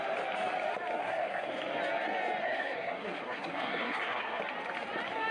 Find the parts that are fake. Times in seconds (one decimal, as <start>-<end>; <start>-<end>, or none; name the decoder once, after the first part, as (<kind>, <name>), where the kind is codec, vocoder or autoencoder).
1.0-1.5 (codec, SNAC); 2.4-4.4